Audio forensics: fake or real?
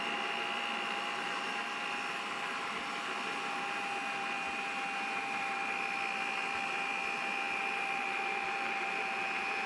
fake